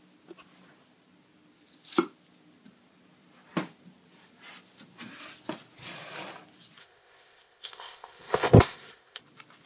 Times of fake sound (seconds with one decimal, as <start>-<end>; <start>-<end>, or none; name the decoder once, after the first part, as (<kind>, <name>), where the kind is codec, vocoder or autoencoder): 6.8-9.2 (codec, ZipCodec)